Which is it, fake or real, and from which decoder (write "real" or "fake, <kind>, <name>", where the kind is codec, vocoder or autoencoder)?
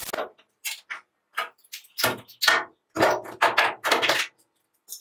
real